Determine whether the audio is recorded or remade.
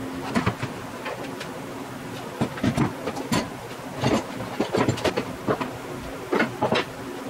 recorded